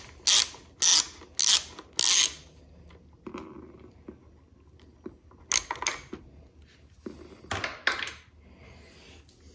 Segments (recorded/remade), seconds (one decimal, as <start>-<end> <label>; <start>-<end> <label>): 0.0-9.5 recorded